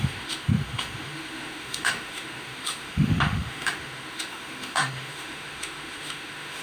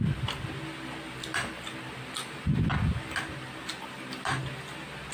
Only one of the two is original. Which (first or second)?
second